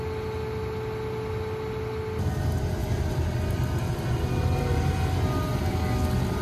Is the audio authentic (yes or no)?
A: yes